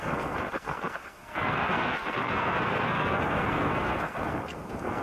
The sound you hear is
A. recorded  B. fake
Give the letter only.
B